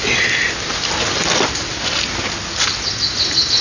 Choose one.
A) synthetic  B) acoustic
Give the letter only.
B